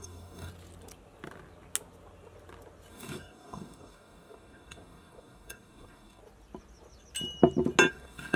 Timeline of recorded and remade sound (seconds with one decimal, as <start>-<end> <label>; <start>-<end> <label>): 0.0-0.5 remade; 0.5-2.9 recorded; 2.9-6.2 remade; 6.2-7.9 recorded; 7.9-8.4 remade